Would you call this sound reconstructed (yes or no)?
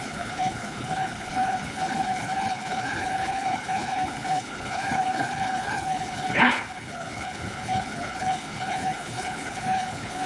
yes